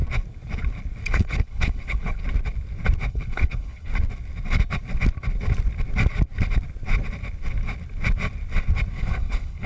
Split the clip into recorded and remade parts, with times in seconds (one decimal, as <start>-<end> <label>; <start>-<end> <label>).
0.0-1.1 recorded; 1.1-2.2 remade; 2.2-3.1 recorded; 3.1-3.9 remade; 3.9-8.9 recorded; 8.9-9.7 remade